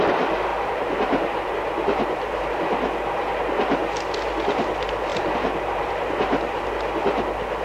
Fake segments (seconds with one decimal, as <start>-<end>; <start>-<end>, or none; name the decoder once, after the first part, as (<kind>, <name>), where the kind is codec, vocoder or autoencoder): 0.5-2.4 (vocoder, BigVGAN v2); 5.1-6.6